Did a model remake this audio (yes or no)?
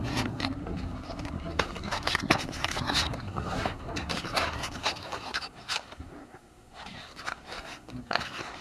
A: yes